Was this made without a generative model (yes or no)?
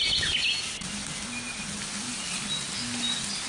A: yes